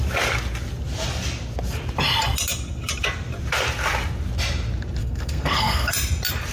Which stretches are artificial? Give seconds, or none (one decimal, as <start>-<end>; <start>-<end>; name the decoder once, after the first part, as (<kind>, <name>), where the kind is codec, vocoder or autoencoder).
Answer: 5.0-5.9 (codec, SNAC)